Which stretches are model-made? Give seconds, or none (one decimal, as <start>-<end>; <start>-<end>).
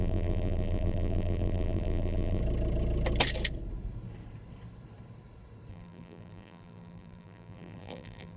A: 0.0-2.4; 5.7-8.4